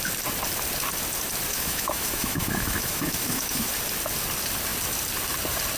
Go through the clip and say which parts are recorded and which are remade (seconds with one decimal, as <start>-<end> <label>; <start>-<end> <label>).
0.0-1.5 recorded; 1.5-3.7 remade; 3.7-5.8 recorded